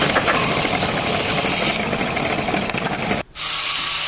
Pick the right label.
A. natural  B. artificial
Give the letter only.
A